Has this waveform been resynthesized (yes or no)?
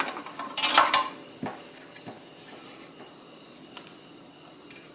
yes